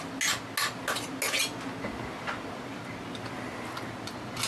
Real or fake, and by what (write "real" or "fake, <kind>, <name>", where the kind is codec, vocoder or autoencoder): real